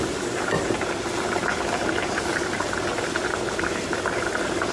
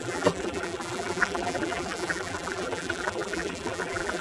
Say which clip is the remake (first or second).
second